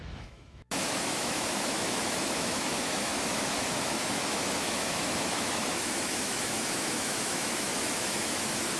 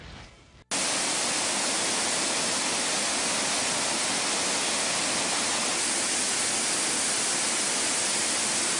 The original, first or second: second